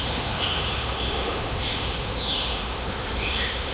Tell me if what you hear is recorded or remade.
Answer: remade